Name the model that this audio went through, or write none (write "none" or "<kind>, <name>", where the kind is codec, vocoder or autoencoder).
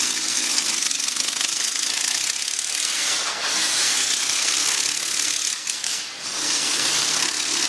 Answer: codec, SNAC